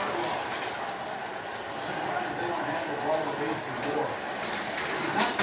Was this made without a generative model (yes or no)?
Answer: yes